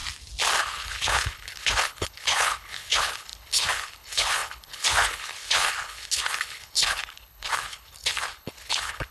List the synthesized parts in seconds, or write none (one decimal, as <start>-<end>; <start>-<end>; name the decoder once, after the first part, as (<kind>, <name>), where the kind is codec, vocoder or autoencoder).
0.6-9.1 (codec, HILCodec)